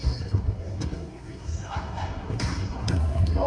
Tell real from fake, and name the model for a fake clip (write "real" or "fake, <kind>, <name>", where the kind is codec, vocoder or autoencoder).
fake, codec, SNAC